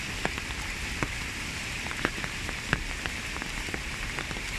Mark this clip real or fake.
real